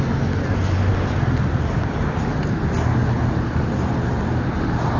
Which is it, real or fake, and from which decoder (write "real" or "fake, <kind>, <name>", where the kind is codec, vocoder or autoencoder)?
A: real